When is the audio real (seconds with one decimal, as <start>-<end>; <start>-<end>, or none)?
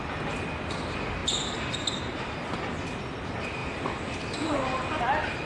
0.0-5.5